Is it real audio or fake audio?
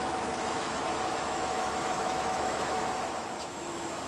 fake